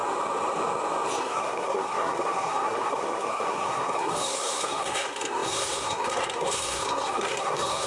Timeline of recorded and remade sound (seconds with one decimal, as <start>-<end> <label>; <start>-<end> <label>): 0.0-1.2 recorded; 1.2-7.9 remade